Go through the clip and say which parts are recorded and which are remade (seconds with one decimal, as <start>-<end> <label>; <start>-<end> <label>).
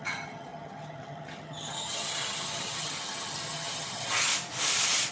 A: 0.0-4.3 remade; 4.3-5.1 recorded